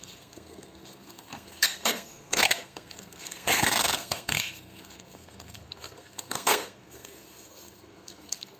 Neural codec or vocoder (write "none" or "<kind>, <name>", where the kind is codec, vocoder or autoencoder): codec, SNAC